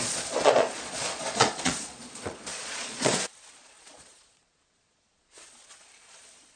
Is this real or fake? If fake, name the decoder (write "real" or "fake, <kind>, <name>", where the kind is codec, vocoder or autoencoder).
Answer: fake, vocoder, Vocos